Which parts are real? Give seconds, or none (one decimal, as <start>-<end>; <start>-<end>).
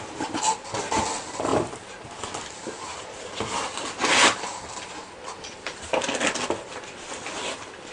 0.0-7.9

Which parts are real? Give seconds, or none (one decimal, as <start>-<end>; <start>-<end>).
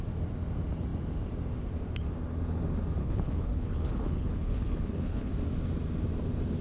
0.0-3.0; 5.3-6.6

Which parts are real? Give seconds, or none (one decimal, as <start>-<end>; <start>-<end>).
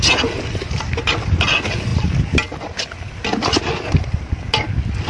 0.0-5.1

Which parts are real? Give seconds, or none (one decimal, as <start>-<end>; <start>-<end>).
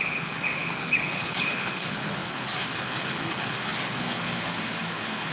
none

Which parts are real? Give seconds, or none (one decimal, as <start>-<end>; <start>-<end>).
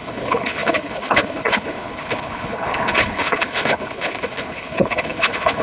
none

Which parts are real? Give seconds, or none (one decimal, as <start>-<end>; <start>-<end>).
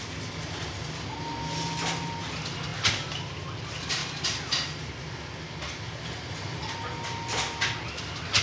0.0-8.4